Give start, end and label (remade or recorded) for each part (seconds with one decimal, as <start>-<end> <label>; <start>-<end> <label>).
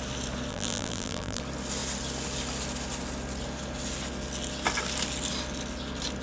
0.0-0.5 recorded; 0.5-1.4 remade; 1.4-6.2 recorded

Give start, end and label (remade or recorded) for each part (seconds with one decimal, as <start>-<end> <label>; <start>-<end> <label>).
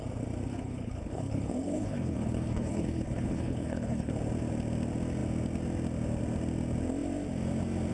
0.0-0.5 recorded; 0.5-4.1 remade; 4.1-7.9 recorded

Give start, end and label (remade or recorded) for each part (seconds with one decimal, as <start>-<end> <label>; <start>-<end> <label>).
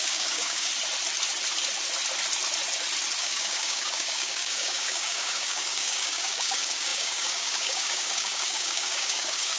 0.0-0.7 remade; 0.7-3.2 recorded; 3.2-9.6 remade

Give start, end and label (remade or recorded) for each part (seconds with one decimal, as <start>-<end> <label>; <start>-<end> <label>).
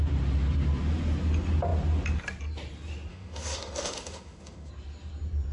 0.0-3.1 recorded; 3.1-4.7 remade; 4.7-5.5 recorded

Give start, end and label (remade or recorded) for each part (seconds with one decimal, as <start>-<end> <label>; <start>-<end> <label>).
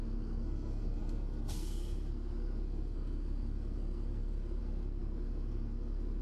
0.0-6.2 remade